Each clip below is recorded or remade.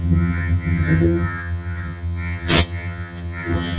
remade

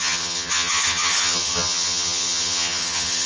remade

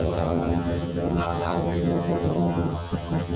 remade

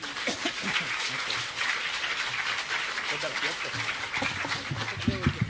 recorded